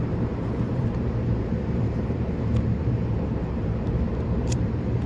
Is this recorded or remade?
remade